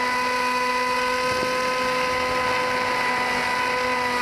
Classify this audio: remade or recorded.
recorded